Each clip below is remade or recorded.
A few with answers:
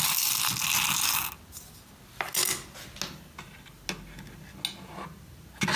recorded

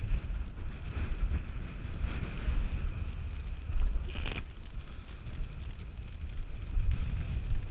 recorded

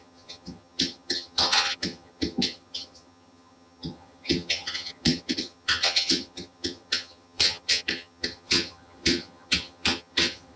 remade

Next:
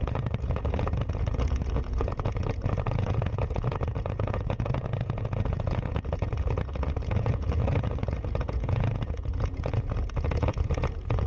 remade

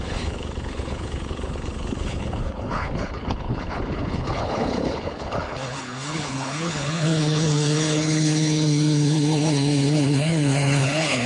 remade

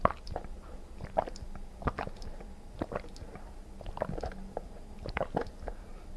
recorded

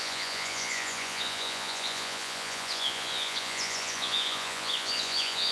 remade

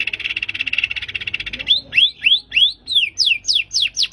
recorded